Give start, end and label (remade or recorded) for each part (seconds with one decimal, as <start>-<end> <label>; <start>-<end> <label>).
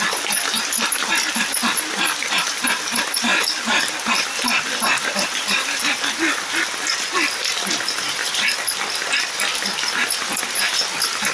0.0-11.3 remade